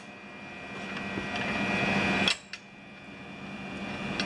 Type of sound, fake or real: real